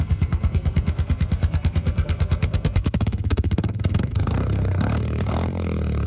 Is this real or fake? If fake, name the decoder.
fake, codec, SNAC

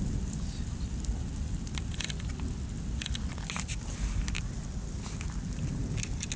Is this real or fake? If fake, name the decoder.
real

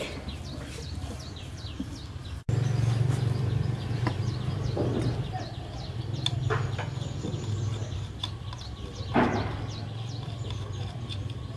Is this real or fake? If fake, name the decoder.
fake, vocoder, BigVGAN v2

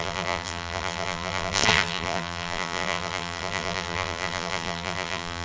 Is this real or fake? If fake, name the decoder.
fake, vocoder, BigVGAN v2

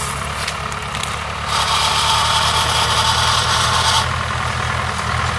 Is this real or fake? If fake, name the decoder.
real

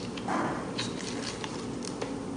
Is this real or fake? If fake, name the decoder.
real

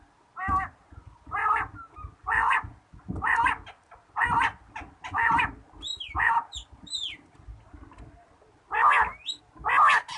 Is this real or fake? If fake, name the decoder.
real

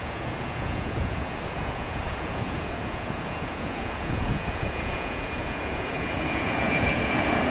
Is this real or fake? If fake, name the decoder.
fake, vocoder, Vocos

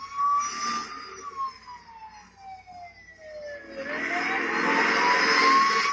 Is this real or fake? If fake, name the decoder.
real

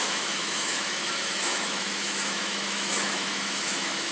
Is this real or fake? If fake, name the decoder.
fake, autoencoder, DAC-VAE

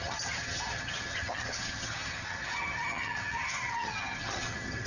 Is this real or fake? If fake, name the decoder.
fake, vocoder, HiFi-GAN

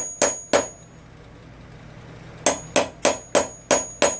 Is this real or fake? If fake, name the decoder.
real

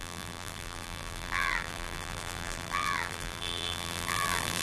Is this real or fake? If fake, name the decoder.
fake, vocoder, BigVGAN v2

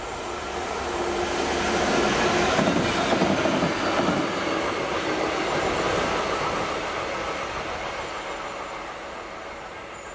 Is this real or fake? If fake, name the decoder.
real